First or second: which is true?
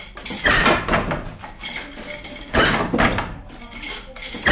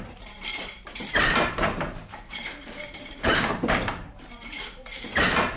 first